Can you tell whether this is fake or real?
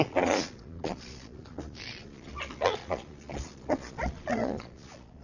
fake